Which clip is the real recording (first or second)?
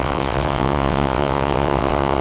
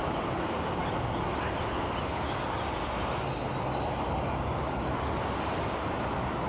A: second